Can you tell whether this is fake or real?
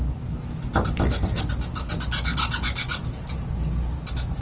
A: real